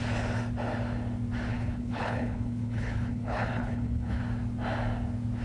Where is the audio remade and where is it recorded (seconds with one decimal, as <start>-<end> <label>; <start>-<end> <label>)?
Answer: 0.0-1.5 recorded; 1.5-4.2 remade; 4.2-5.4 recorded